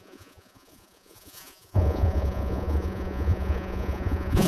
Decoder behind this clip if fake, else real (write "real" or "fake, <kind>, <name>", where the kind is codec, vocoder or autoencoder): fake, vocoder, Vocos